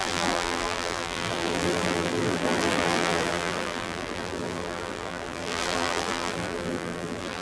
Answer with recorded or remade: remade